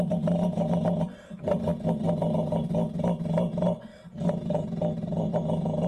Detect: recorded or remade recorded